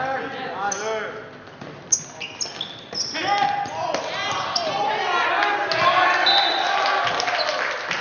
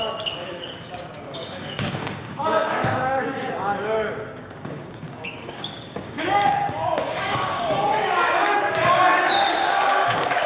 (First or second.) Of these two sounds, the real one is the first